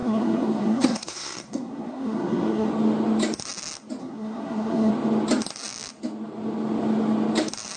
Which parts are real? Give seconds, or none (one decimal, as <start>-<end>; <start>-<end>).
2.7-4.0; 4.9-7.8

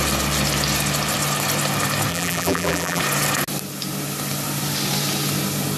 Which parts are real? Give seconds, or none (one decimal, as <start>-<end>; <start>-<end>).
0.0-2.1; 3.0-5.8

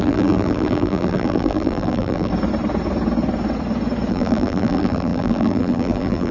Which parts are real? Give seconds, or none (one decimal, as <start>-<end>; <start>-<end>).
2.3-4.1

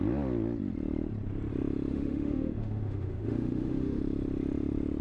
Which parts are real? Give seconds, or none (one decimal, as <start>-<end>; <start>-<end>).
0.0-1.9; 4.0-5.0

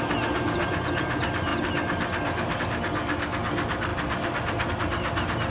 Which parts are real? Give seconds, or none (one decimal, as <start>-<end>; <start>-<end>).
0.0-5.5

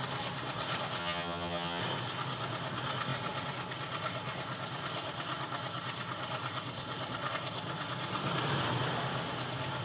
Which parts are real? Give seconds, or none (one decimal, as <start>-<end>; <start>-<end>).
0.0-1.0; 1.8-9.8

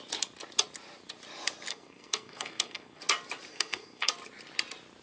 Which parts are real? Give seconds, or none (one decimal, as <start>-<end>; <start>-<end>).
0.0-1.7; 3.0-3.5; 4.1-5.0

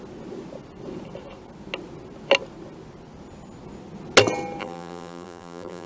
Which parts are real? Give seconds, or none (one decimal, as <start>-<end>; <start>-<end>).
0.0-4.6